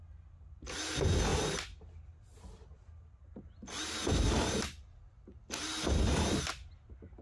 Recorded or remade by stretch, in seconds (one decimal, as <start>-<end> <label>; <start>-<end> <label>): 0.0-7.2 recorded